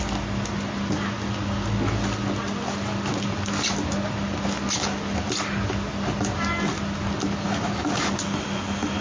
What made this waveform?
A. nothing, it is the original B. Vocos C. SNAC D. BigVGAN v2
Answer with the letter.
A